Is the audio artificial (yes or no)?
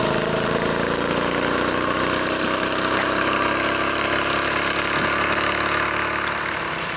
yes